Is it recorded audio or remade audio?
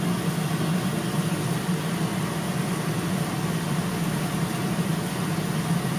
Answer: recorded